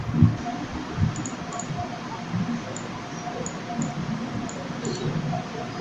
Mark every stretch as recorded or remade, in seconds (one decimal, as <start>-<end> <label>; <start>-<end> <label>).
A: 0.0-5.8 recorded